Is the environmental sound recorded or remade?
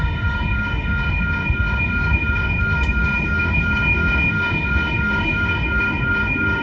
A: remade